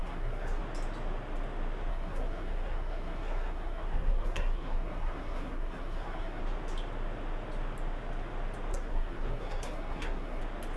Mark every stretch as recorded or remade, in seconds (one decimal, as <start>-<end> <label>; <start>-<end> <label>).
0.0-0.6 remade; 0.6-1.9 recorded; 1.9-6.4 remade; 6.4-8.7 recorded; 8.7-10.4 remade; 10.4-10.8 recorded